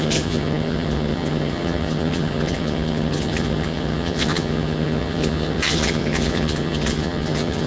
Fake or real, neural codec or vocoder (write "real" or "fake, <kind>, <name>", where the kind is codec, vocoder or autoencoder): fake, vocoder, HiFi-GAN